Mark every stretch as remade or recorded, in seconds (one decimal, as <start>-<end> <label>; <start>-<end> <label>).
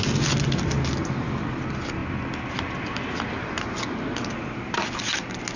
0.0-5.6 recorded